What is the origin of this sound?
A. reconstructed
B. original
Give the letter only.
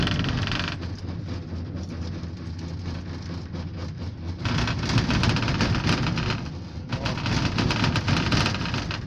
B